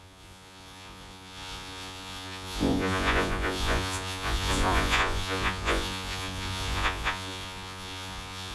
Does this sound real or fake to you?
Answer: fake